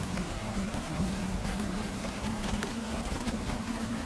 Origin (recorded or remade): remade